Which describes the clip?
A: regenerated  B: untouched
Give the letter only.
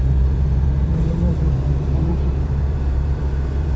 A